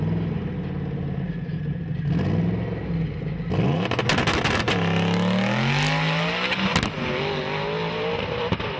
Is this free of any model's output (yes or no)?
yes